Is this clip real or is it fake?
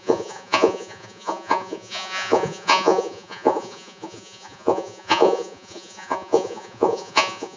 fake